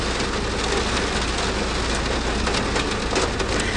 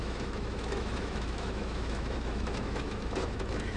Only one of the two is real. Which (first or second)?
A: first